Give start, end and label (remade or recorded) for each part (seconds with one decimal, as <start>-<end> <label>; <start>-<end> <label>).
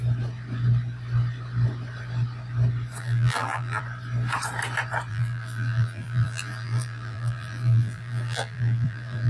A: 0.0-3.0 recorded; 3.0-3.8 remade; 3.8-5.1 recorded; 5.1-9.3 remade